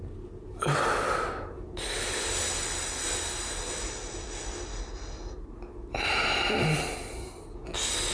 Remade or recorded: recorded